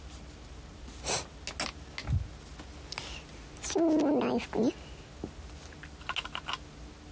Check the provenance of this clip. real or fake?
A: real